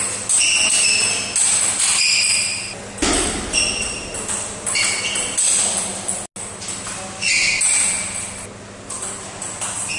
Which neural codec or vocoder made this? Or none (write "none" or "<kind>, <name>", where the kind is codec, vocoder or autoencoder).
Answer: none